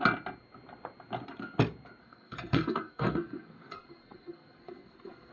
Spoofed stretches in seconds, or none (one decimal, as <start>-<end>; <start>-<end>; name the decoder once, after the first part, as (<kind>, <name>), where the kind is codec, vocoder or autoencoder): 2.0-5.3 (codec, SNAC)